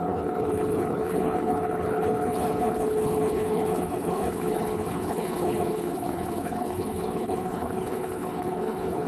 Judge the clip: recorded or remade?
remade